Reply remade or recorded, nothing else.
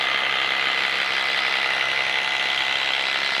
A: recorded